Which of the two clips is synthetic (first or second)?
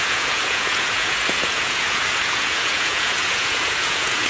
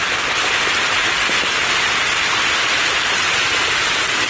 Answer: first